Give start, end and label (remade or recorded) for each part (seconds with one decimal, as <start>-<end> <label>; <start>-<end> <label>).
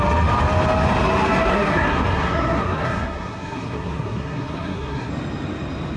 0.0-1.5 recorded; 1.5-5.1 remade; 5.1-6.0 recorded